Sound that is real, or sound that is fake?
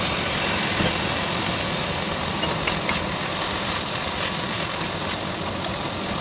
real